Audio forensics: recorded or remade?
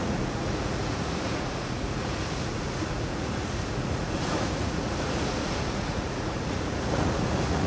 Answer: remade